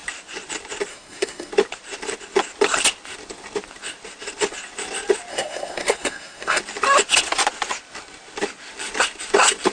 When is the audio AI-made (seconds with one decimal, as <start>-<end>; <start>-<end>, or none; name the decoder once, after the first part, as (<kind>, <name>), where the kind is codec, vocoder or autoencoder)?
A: 0.9-1.5 (codec, SNAC); 5.3-6.6